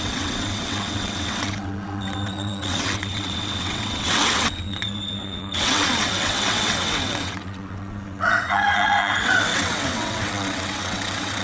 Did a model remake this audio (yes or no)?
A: yes